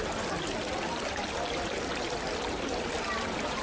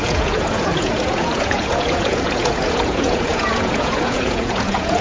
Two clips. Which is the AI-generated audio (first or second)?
second